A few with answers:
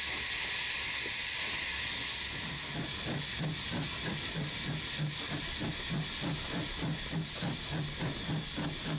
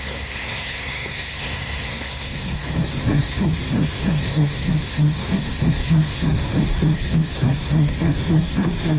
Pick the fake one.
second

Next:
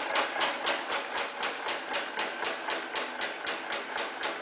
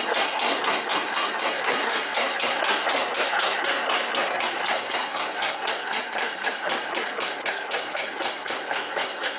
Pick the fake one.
second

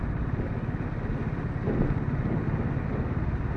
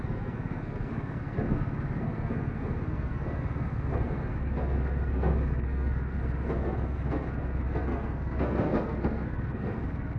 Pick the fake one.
second